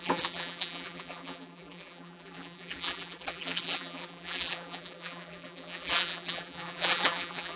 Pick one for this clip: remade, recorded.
remade